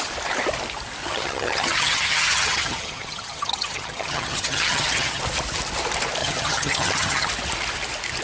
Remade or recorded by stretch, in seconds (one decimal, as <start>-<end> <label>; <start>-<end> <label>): 0.0-1.0 recorded; 1.0-5.2 remade; 5.2-6.2 recorded; 6.2-7.3 remade; 7.3-8.2 recorded